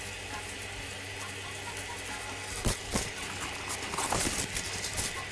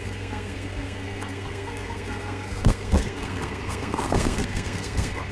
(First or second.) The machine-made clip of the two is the second